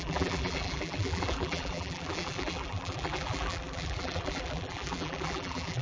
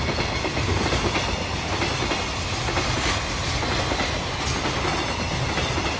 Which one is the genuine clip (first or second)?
second